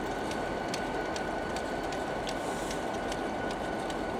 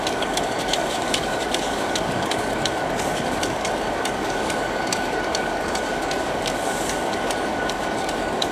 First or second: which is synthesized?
second